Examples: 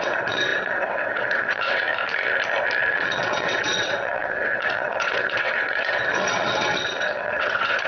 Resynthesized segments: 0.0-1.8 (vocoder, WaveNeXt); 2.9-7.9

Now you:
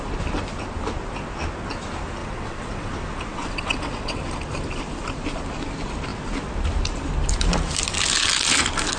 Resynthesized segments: 2.2-2.9 (vocoder, WaveNeXt); 3.3-4.2

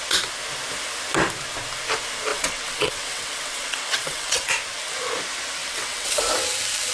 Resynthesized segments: 2.3-4.5 (vocoder, WaveNeXt); 5.6-6.2